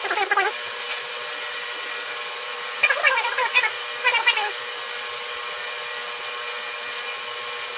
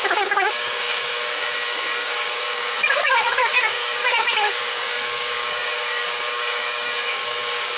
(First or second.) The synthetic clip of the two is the second